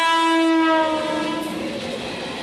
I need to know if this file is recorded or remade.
recorded